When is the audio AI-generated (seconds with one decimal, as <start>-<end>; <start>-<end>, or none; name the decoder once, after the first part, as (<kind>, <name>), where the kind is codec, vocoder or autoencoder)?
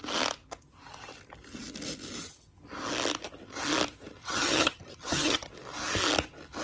4.2-5.5 (vocoder, HiFi-GAN)